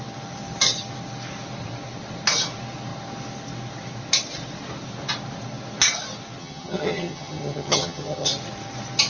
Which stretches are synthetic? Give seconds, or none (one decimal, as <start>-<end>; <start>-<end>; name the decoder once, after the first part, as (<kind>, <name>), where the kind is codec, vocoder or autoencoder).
6.4-8.3 (vocoder, HiFi-GAN)